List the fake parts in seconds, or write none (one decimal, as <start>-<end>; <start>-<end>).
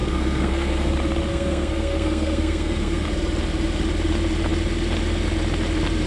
0.0-0.9; 1.3-3.1